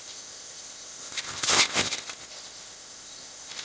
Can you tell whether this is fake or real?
fake